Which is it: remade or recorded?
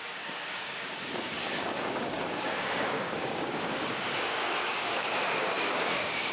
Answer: remade